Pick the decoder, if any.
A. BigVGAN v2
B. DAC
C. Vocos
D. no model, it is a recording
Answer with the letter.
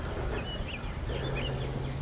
D